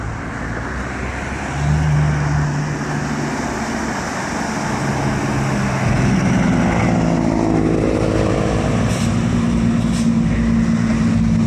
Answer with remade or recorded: recorded